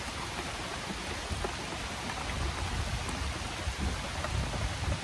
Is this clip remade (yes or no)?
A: no